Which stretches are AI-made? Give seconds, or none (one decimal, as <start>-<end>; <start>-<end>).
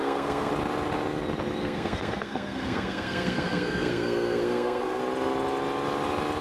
0.0-0.5; 1.6-5.0